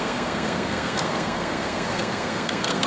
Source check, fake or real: fake